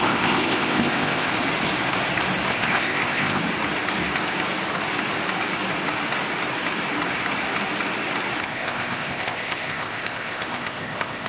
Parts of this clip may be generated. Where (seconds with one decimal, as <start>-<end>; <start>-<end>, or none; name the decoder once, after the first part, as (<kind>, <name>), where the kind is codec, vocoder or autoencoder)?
0.0-1.3 (codec, ZipCodec); 2.5-3.4; 8.4-11.3

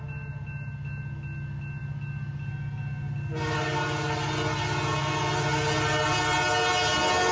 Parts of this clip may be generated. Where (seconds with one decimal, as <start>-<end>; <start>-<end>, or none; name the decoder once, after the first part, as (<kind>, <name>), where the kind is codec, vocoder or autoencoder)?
none

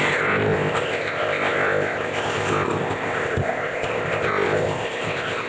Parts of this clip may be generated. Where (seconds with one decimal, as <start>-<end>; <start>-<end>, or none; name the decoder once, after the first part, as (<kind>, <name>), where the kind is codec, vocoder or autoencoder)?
0.0-5.5 (codec, ZipCodec)

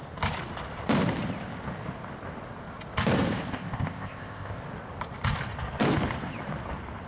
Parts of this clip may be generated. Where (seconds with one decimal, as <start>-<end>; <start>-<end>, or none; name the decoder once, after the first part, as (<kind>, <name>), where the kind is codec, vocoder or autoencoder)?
3.5-4.6 (codec, ZipCodec)

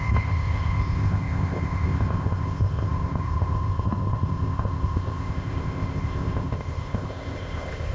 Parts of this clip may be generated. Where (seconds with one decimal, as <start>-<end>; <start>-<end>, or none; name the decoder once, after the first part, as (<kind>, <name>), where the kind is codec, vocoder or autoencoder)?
0.0-7.9 (codec, ZipCodec)

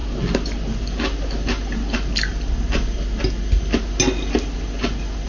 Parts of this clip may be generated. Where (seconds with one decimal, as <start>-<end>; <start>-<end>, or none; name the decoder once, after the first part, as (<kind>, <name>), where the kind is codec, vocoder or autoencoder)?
none

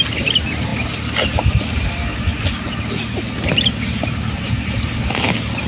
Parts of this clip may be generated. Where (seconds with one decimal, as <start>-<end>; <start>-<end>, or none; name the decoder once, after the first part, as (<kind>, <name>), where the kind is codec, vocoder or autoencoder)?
none

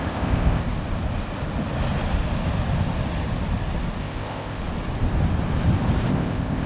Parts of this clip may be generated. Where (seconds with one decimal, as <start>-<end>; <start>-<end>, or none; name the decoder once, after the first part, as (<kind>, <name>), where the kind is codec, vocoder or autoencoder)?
0.0-0.6 (codec, ZipCodec); 4.0-4.6; 6.1-6.7